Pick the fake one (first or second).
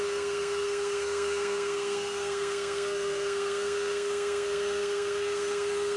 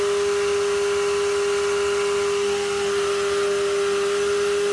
first